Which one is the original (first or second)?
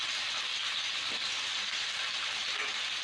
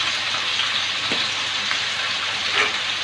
first